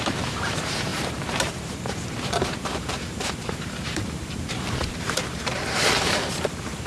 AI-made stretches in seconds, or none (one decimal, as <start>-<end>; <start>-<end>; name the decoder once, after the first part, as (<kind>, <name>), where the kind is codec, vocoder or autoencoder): 0.0-6.9 (vocoder, BigVGAN v2)